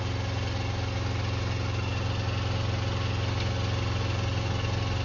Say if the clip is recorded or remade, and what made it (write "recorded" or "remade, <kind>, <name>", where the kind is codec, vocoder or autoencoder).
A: recorded